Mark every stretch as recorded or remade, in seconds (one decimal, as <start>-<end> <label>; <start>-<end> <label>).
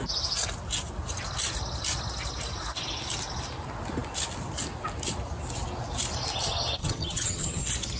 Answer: 0.0-6.8 recorded; 6.8-7.6 remade; 7.6-8.0 recorded